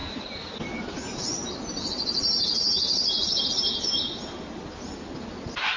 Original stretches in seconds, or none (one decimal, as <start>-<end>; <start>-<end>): 0.0-5.8